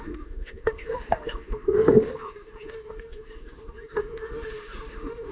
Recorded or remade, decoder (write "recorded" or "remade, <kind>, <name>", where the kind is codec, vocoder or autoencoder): remade, autoencoder, DAC-VAE